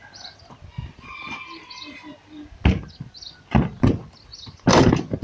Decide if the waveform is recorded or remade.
recorded